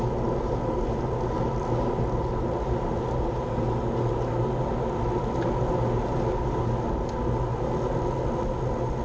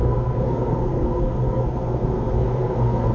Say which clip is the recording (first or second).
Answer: first